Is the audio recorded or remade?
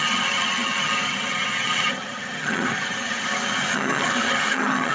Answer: remade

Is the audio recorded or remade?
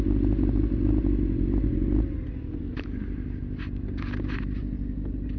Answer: recorded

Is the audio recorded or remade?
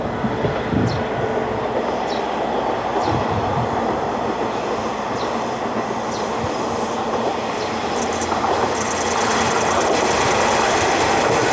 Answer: recorded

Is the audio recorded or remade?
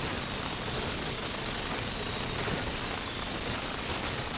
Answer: recorded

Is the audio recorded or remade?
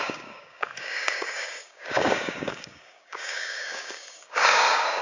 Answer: remade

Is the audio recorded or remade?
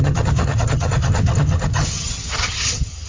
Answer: remade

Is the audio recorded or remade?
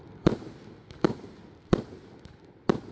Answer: recorded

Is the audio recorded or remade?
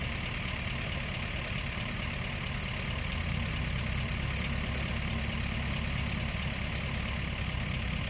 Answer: recorded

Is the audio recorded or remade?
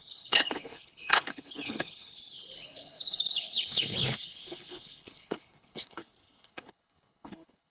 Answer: remade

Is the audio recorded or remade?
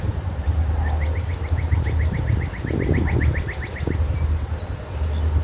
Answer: recorded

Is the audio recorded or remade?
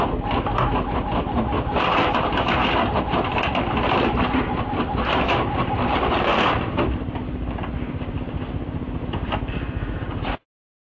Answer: recorded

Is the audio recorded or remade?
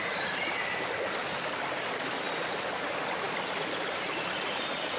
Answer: recorded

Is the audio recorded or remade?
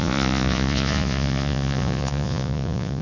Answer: remade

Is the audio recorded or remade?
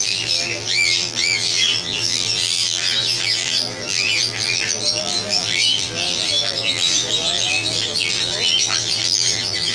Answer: remade